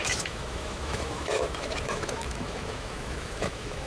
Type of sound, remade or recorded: remade